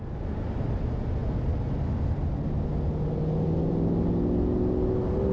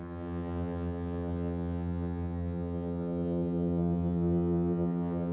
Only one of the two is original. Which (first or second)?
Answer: first